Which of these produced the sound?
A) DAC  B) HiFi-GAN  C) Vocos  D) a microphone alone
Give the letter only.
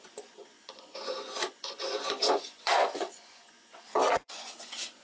C